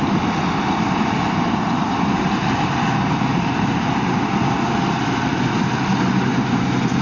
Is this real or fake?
fake